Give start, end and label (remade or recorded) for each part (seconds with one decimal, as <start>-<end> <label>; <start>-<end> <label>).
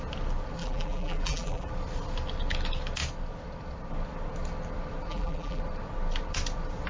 0.0-0.6 recorded; 0.6-1.7 remade; 1.7-5.1 recorded; 5.1-5.6 remade; 5.6-6.9 recorded